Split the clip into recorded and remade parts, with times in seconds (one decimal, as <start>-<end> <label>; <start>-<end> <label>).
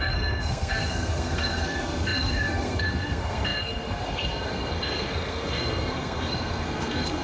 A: 0.0-7.2 remade